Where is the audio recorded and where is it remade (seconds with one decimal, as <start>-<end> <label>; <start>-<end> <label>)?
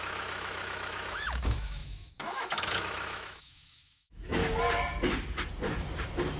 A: 0.0-4.4 remade; 4.4-6.4 recorded